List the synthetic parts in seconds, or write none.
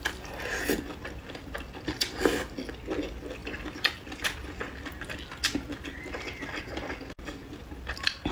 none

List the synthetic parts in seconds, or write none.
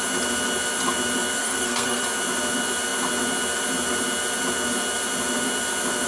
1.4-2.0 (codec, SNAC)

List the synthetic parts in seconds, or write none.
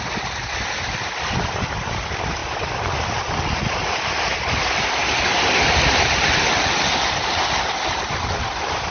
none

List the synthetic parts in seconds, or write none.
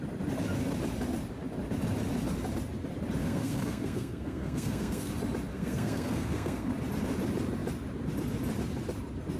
3.2-5.1 (codec, SNAC); 5.5-6.7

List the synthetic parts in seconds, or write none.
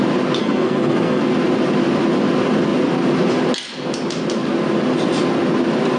0.4-1.2 (codec, SNAC)